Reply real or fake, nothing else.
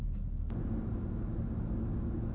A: real